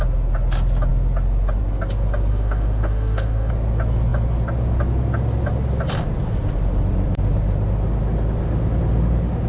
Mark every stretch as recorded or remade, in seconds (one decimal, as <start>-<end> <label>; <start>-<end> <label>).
0.0-2.3 recorded; 2.3-3.5 remade; 3.5-9.5 recorded